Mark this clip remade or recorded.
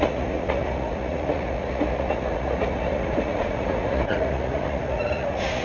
remade